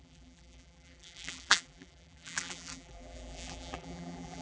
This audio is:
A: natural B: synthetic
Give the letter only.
B